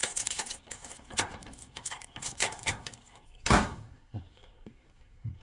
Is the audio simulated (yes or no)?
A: yes